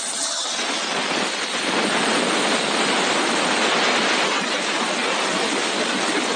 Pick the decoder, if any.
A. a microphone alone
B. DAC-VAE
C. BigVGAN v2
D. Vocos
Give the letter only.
A